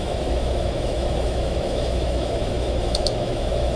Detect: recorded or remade remade